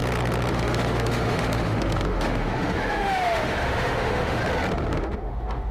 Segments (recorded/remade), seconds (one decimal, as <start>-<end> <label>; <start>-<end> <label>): 0.0-0.5 recorded; 0.5-4.4 remade; 4.4-4.9 recorded; 4.9-5.7 remade